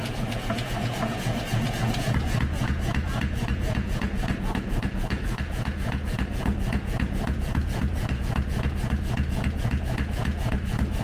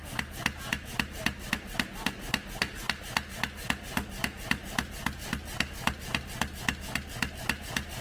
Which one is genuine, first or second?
second